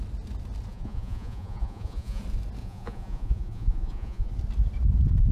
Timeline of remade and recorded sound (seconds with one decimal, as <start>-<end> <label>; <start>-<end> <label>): 0.0-0.7 recorded; 0.7-2.2 remade; 2.2-2.6 recorded; 2.6-4.3 remade; 4.3-5.3 recorded